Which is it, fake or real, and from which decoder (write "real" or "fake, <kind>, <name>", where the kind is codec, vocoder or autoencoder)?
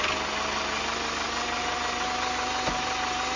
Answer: real